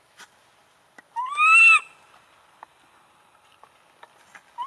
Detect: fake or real real